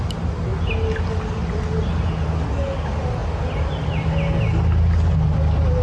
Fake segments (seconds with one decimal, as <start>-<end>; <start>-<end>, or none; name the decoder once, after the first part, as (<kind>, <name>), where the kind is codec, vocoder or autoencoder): none